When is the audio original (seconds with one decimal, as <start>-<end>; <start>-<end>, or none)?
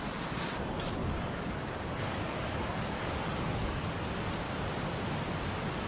0.0-1.0; 4.0-5.9